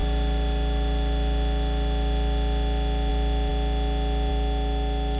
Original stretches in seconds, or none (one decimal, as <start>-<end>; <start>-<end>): 0.0-5.2